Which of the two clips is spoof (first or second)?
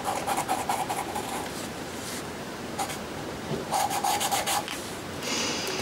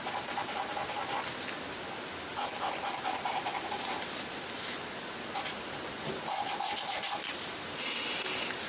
first